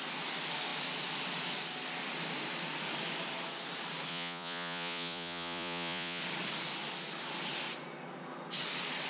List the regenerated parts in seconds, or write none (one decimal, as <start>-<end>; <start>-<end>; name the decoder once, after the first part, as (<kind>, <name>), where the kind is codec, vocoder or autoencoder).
4.1-6.2 (vocoder, Vocos)